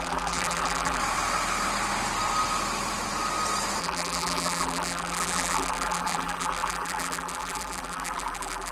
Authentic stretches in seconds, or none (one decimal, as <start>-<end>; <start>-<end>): 1.0-3.8